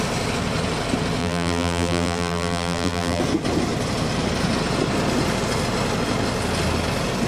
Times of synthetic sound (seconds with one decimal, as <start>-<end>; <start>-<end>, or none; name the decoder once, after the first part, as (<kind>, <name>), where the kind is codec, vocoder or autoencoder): 1.2-3.2 (vocoder, BigVGAN v2)